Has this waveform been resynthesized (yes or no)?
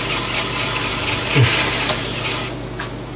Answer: no